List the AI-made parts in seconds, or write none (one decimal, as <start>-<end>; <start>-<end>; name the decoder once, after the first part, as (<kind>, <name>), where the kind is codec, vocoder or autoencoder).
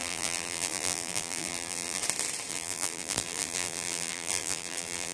0.0-2.0 (vocoder, BigVGAN v2); 2.5-5.1